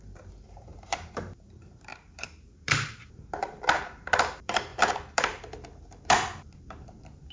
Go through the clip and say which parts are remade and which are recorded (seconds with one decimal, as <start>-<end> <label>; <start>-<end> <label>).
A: 0.0-7.3 remade